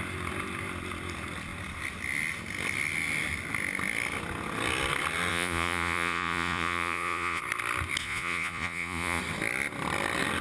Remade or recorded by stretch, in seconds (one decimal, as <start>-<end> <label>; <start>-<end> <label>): 0.0-5.3 recorded; 5.3-7.4 remade; 7.4-8.0 recorded; 8.0-9.2 remade; 9.2-10.4 recorded